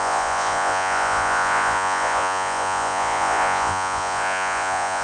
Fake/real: fake